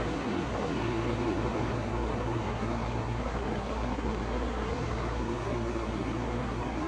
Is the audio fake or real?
fake